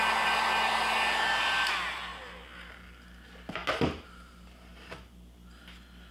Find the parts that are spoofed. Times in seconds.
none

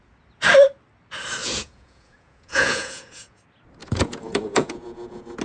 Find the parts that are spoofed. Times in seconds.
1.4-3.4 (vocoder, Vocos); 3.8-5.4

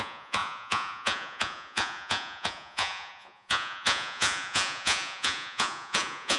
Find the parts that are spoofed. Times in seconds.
0.0-6.4 (vocoder, Vocos)